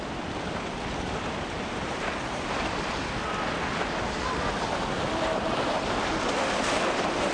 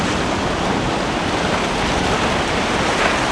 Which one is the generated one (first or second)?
first